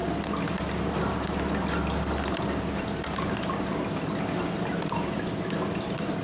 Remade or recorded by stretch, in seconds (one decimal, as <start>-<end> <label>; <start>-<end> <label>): 0.0-6.2 recorded